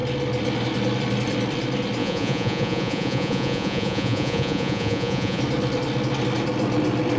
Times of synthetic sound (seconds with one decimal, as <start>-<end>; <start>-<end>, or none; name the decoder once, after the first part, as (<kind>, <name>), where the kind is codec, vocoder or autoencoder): 2.0-5.4 (vocoder, Vocos)